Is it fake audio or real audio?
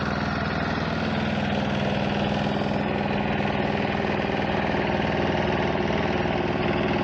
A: real